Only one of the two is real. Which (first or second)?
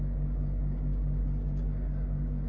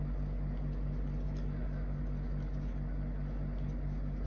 second